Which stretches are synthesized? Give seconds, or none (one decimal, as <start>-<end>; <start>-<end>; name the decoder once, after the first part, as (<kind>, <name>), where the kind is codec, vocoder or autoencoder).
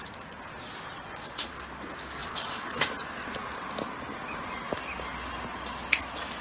1.0-1.5 (vocoder, Vocos); 2.2-2.8